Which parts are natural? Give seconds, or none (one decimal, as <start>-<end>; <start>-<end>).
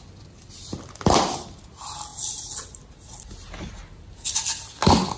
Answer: 0.0-5.2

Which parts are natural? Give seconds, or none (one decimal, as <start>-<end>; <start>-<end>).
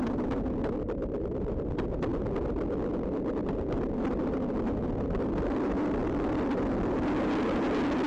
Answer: 0.0-8.1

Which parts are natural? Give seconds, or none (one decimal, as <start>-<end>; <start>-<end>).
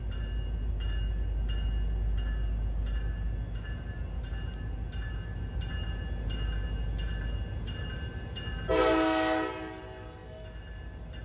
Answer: 0.0-11.2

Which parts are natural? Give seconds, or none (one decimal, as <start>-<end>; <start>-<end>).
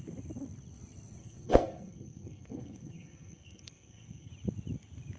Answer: 0.0-1.2; 4.3-5.2